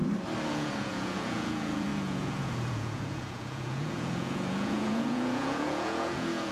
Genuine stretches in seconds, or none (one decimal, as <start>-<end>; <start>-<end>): 0.0-0.5